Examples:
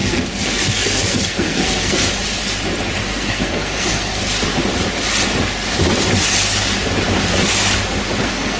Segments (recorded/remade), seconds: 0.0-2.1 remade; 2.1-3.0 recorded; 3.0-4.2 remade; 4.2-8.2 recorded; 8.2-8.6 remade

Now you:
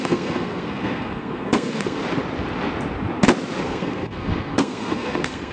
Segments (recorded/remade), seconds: 0.0-2.0 remade; 2.0-3.6 recorded; 3.6-5.5 remade

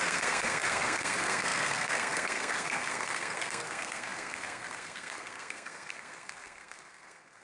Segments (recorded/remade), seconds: 0.0-7.4 remade

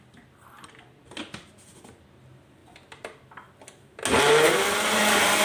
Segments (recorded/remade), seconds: 0.0-5.4 recorded

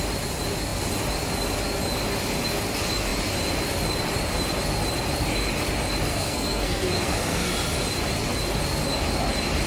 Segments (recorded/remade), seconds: 0.0-6.1 recorded; 6.1-7.5 remade; 7.5-9.7 recorded